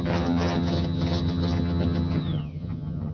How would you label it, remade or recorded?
remade